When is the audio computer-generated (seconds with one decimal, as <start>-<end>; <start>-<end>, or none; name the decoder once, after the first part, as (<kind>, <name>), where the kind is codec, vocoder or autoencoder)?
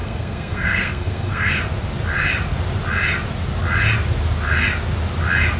0.0-1.5 (codec, SNAC)